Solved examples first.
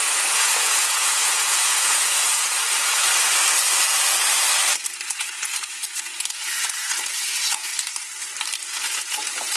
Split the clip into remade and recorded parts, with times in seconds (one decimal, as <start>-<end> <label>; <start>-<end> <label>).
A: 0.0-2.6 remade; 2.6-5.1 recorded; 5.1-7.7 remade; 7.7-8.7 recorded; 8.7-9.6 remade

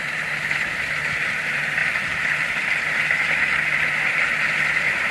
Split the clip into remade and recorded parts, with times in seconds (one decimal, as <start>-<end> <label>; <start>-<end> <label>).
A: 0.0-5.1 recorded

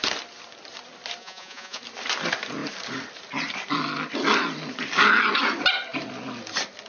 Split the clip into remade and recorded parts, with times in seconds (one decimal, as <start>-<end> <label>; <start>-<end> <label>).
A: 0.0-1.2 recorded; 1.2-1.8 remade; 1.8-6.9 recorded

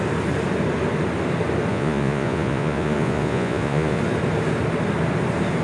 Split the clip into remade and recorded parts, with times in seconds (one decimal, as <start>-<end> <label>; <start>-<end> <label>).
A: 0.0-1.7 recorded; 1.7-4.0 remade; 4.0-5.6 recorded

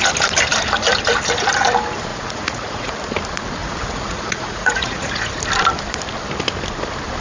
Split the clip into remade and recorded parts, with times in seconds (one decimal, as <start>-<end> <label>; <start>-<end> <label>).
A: 0.0-2.1 recorded; 2.1-2.9 remade; 2.9-3.6 recorded; 3.6-5.3 remade; 5.3-7.2 recorded

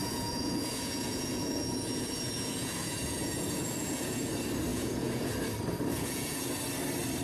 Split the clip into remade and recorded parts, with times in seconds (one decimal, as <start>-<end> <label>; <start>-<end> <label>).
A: 0.0-4.3 remade; 4.3-4.7 recorded; 4.7-5.3 remade; 5.3-5.9 recorded; 5.9-6.5 remade; 6.5-7.2 recorded

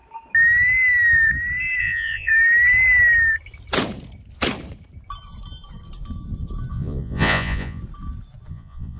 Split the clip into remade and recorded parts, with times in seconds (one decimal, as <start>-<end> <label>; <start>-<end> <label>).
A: 0.0-1.8 recorded; 1.8-2.3 remade; 2.3-6.7 recorded; 6.7-7.8 remade; 7.8-8.5 recorded; 8.5-9.0 remade